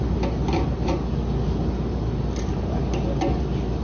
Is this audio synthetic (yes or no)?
no